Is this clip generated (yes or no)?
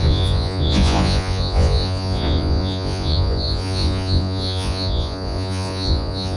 yes